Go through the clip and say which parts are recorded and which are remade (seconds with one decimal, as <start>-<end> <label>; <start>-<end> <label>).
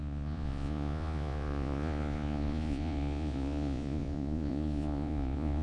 0.0-5.6 remade